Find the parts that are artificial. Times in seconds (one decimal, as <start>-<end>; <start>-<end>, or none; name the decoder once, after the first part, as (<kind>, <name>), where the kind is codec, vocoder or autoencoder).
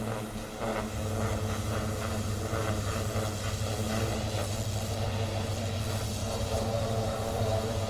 6.2-7.5 (vocoder, BigVGAN v2)